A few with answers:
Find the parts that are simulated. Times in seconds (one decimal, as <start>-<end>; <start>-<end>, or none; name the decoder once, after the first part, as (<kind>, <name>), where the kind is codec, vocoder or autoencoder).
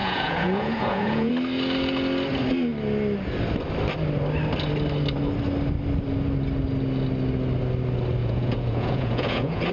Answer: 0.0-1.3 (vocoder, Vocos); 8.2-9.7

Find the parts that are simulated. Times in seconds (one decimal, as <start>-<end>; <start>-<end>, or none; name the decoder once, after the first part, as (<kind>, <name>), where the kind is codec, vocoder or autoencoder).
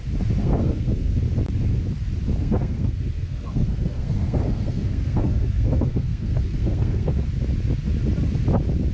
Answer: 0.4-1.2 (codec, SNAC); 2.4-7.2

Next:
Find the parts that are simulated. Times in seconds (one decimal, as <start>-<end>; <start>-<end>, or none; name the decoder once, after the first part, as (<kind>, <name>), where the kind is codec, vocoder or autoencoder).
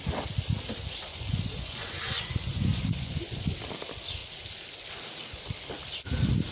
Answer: 1.1-3.4 (vocoder, Vocos)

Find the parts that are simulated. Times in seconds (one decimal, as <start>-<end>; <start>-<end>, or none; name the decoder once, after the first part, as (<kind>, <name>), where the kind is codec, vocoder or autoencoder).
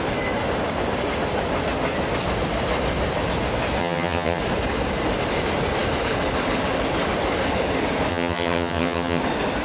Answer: 3.8-4.4 (vocoder, HiFi-GAN); 8.1-9.2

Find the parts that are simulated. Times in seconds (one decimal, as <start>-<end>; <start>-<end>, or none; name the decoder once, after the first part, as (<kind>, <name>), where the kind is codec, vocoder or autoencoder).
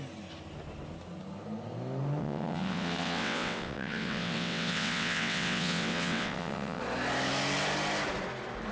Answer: 2.2-6.8 (vocoder, WaveNeXt)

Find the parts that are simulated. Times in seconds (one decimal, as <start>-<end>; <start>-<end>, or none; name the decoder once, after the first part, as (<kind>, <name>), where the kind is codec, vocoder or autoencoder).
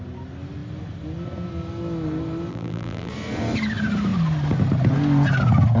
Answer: 2.5-3.1 (vocoder, BigVGAN v2)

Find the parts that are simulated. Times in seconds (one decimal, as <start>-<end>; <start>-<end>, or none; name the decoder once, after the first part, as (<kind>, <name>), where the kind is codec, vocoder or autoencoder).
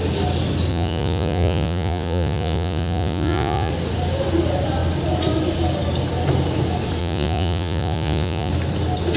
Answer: 0.7-3.7 (vocoder, Vocos); 7.0-8.5